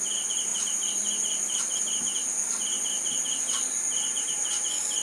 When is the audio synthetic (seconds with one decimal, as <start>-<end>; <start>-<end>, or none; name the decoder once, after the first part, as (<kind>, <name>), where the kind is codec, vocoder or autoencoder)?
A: none